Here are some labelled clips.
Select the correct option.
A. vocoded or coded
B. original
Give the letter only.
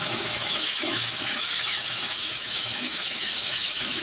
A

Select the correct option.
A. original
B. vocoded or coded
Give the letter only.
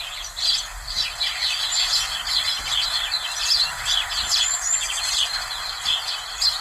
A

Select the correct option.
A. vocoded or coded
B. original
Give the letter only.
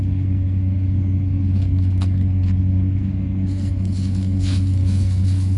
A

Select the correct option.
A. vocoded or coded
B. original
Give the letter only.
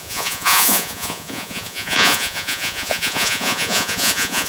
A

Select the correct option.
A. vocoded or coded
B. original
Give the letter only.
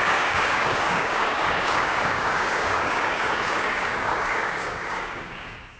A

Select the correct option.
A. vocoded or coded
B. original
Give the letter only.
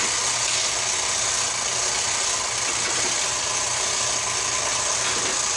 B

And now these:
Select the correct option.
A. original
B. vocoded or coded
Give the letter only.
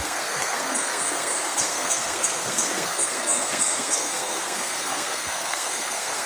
B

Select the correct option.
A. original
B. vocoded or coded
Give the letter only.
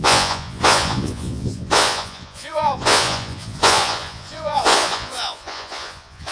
B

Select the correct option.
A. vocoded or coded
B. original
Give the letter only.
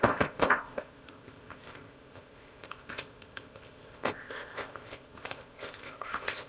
A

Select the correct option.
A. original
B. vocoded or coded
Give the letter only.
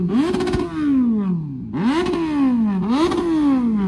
A